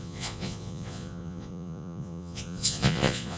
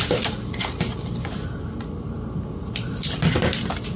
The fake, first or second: first